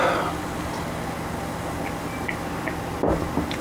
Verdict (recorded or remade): recorded